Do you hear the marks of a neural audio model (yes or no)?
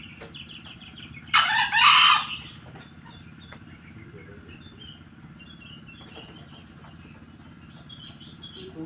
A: no